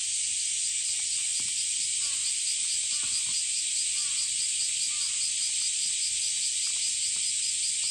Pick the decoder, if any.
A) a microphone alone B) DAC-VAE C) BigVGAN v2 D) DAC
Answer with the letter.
A